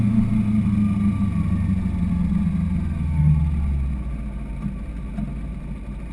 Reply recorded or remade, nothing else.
recorded